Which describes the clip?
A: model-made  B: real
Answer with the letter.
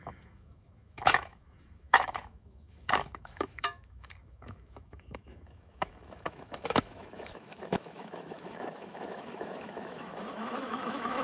A